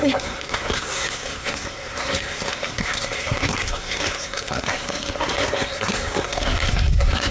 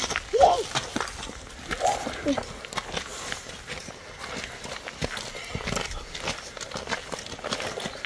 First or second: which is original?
second